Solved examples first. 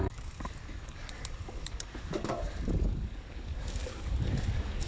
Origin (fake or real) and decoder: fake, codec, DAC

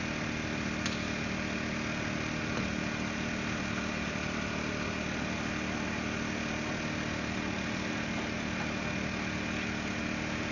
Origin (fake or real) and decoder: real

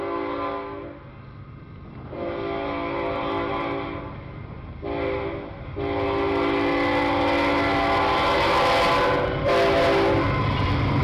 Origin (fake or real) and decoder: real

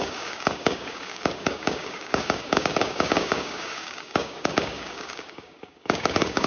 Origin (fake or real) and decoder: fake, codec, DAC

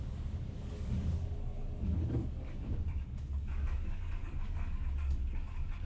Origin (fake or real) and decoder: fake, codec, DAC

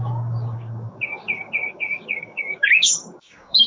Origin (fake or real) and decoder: fake, codec, DAC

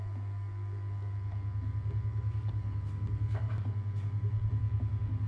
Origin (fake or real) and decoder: fake, codec, DAC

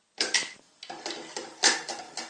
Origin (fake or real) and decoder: real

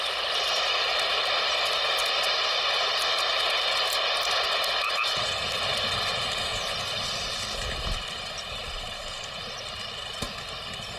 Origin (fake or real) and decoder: real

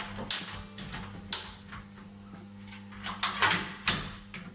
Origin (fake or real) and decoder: real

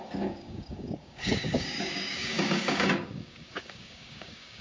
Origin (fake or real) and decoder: fake, codec, DAC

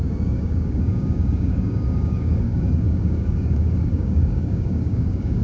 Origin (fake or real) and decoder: fake, codec, DAC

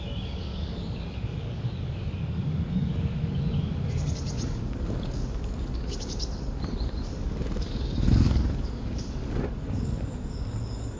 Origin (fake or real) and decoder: fake, codec, DAC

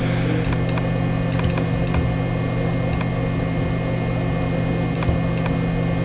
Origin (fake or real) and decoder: real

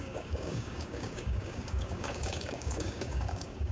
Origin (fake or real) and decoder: fake, codec, DAC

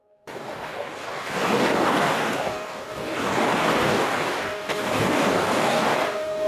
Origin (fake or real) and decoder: fake, codec, DAC